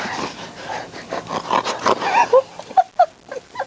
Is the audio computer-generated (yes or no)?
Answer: no